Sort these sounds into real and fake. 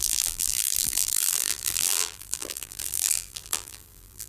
fake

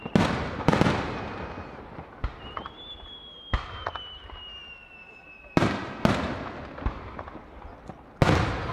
real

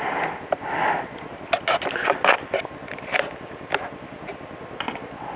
real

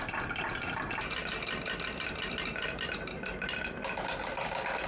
real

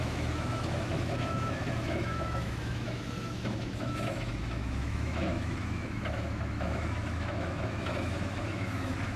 fake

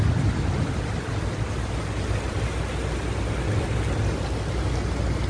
real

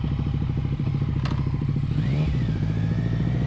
real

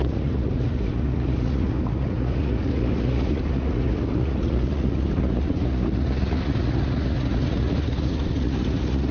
fake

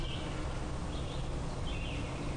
real